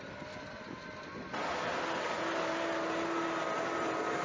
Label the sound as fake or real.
real